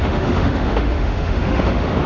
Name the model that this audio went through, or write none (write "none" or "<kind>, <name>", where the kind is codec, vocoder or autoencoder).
autoencoder, DAC-VAE